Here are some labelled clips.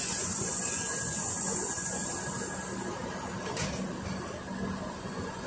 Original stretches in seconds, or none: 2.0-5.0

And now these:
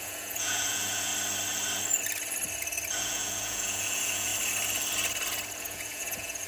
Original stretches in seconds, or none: 1.1-2.9; 4.3-5.6

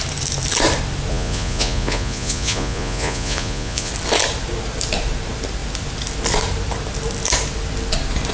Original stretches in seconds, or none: 0.0-1.1; 3.9-8.3